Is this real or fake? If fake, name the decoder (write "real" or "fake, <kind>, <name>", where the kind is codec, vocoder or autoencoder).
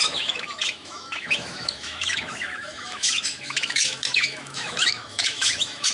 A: fake, autoencoder, DAC-VAE